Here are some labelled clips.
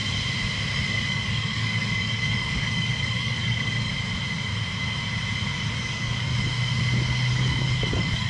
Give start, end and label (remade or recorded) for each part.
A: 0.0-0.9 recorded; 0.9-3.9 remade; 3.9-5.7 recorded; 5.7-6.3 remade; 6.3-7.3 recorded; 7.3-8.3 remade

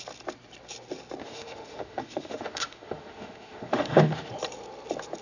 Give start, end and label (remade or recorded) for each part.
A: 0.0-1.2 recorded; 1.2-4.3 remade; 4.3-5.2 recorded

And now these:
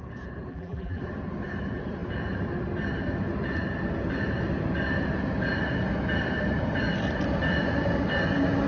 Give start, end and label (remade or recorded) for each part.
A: 0.0-0.5 recorded; 0.5-1.0 remade; 1.0-8.7 recorded

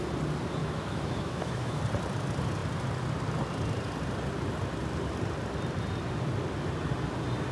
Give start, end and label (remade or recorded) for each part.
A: 0.0-0.6 recorded; 0.6-1.8 remade; 1.8-7.5 recorded

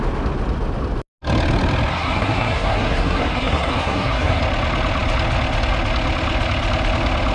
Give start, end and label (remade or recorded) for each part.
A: 0.0-1.9 recorded; 1.9-4.4 remade; 4.4-7.3 recorded